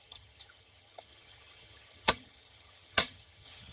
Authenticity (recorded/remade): remade